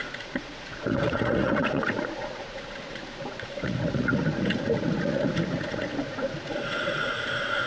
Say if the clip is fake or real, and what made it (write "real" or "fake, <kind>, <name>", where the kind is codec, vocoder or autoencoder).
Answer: fake, vocoder, Vocos